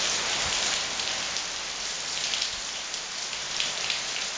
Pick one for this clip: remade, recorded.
remade